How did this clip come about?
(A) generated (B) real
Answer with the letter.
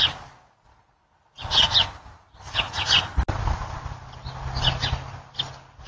B